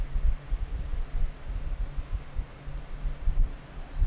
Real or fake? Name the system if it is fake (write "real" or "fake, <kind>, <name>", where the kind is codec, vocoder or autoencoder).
real